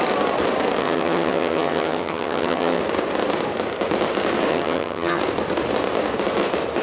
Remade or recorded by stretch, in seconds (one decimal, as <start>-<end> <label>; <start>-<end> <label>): 0.0-0.8 recorded; 0.8-2.8 remade; 2.8-4.5 recorded; 4.5-5.2 remade; 5.2-6.8 recorded